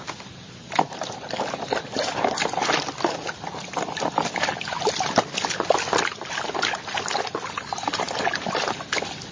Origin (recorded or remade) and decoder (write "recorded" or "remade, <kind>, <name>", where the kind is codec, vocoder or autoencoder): recorded